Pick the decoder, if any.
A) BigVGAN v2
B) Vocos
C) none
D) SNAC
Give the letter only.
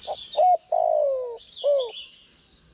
C